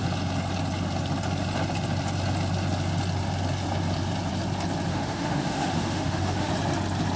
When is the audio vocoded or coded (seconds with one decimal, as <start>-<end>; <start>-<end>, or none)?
4.9-6.5